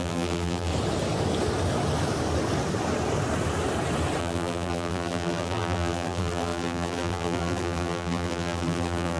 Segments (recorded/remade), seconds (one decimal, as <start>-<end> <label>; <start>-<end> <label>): 0.0-0.7 remade; 0.7-4.2 recorded; 4.2-9.2 remade